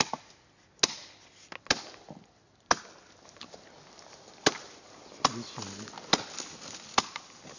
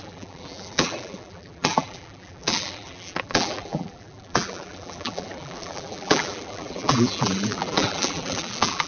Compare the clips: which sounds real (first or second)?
first